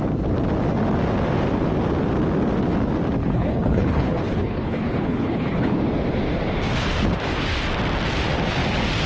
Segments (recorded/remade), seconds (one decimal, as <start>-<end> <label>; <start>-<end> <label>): 0.0-3.2 recorded; 3.2-5.8 remade; 5.8-9.1 recorded